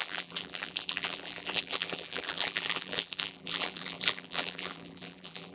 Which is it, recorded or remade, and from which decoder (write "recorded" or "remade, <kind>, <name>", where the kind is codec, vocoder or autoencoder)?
remade, vocoder, BigVGAN v2